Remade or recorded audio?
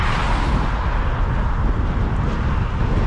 recorded